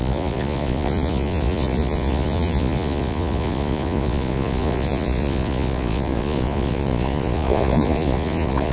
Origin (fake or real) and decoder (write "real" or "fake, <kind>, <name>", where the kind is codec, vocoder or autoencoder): fake, vocoder, Vocos